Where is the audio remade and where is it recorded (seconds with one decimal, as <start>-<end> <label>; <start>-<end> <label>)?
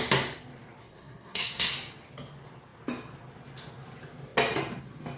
0.0-0.8 recorded; 0.8-1.7 remade; 1.7-5.2 recorded